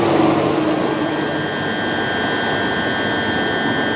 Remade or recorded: recorded